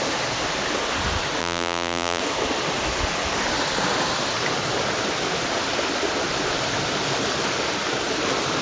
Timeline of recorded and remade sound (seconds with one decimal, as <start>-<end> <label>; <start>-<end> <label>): 0.0-1.4 recorded; 1.4-2.2 remade; 2.2-8.6 recorded